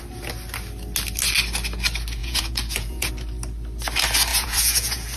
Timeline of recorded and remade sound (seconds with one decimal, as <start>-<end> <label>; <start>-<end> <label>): 0.0-2.2 recorded; 2.2-3.1 remade; 3.1-4.3 recorded; 4.3-5.2 remade